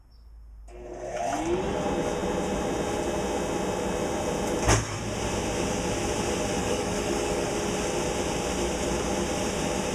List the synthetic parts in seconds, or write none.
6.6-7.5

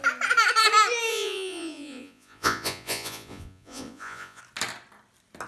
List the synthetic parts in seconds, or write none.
1.1-4.4

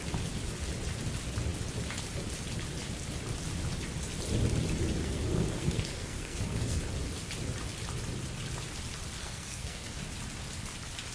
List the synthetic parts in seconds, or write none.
5.0-6.8; 9.2-10.0

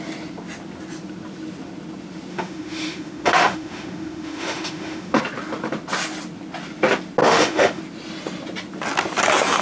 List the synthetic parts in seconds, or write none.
2.3-5.2; 7.2-7.8

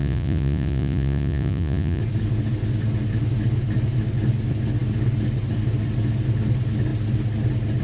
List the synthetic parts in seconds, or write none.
0.0-2.0

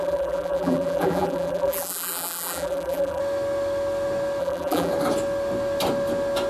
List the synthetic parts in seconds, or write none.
0.0-3.2; 4.4-4.9

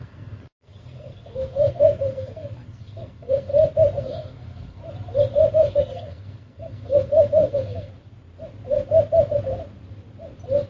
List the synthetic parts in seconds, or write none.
0.0-3.5; 4.0-4.8; 5.5-7.9

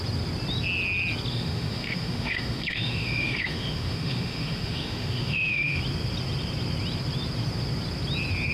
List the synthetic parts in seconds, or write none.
1.3-5.8